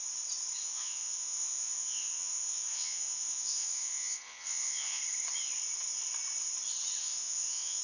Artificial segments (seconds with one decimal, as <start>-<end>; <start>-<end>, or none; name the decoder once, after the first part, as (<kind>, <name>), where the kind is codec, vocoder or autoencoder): 0.6-5.0 (vocoder, Vocos); 7.0-7.8